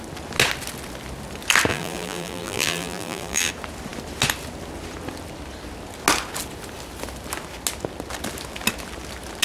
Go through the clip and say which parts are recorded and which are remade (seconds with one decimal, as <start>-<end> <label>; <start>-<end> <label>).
0.0-1.7 recorded; 1.7-3.5 remade; 3.5-9.4 recorded